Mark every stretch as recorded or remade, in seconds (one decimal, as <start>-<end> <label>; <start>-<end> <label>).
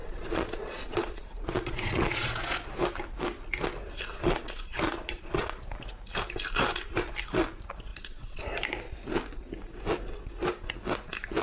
0.0-2.7 remade; 2.7-4.1 recorded; 4.1-5.7 remade; 5.7-7.9 recorded; 7.9-8.4 remade; 8.4-11.4 recorded